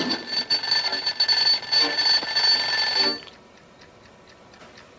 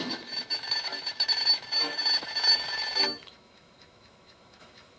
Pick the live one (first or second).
first